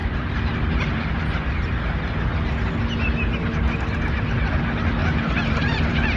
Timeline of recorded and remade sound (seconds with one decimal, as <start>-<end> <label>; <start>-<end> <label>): 0.0-1.1 remade; 1.1-5.0 recorded; 5.0-6.2 remade